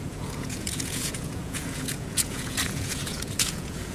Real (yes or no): no